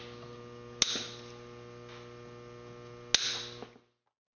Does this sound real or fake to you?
real